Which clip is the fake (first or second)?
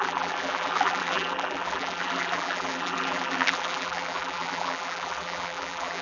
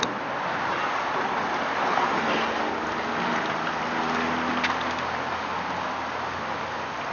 first